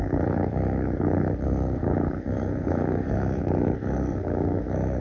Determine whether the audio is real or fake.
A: fake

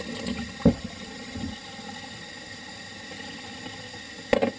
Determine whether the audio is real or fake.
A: real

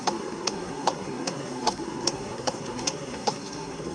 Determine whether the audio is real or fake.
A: fake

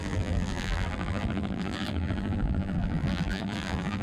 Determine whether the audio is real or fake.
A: fake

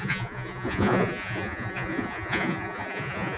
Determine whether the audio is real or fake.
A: fake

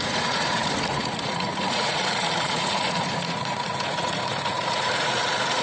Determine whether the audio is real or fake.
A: fake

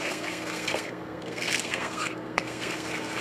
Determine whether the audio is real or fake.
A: fake